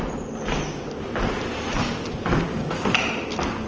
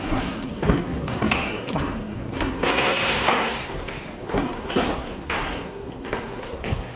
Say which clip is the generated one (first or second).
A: second